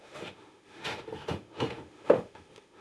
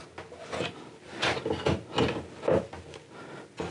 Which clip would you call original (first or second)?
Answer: second